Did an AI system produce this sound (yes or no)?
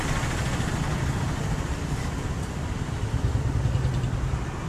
no